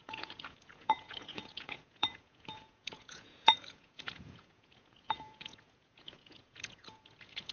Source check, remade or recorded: remade